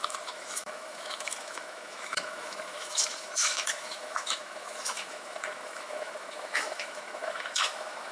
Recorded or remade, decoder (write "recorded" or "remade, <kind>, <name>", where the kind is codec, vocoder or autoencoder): remade, autoencoder, DAC-VAE